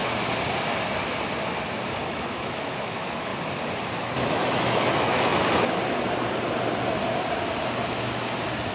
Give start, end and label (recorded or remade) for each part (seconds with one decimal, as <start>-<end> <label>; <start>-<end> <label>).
0.0-1.9 recorded; 1.9-3.3 remade; 3.3-4.2 recorded; 4.2-5.3 remade; 5.3-8.7 recorded